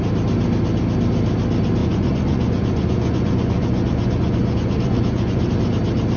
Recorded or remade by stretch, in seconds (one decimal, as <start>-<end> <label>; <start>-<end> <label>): 0.0-1.8 recorded; 1.8-5.5 remade; 5.5-6.2 recorded